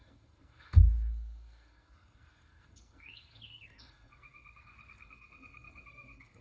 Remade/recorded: remade